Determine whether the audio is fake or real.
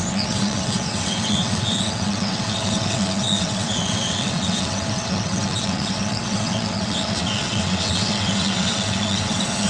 fake